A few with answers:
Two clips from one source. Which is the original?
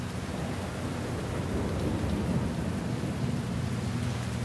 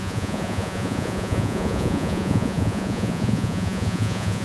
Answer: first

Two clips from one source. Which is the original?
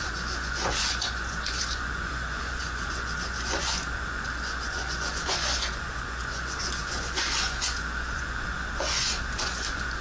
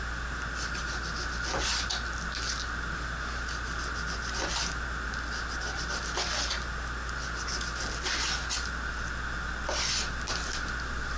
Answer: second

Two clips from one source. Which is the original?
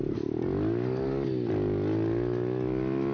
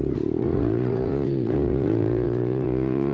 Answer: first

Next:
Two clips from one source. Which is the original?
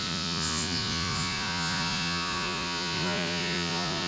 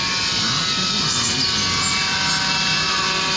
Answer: second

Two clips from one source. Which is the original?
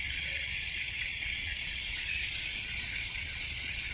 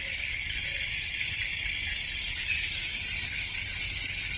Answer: second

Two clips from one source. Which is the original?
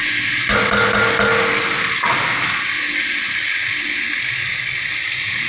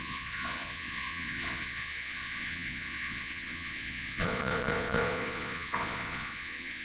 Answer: first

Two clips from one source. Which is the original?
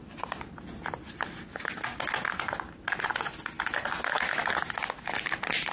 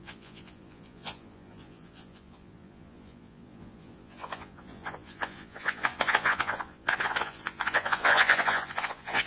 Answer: first